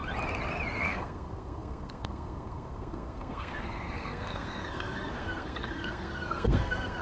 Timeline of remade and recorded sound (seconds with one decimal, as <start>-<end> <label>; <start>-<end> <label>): 0.0-0.8 recorded; 0.8-7.0 remade